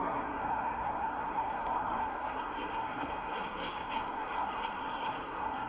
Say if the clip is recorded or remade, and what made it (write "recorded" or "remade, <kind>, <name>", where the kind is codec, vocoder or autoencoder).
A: remade, codec, SNAC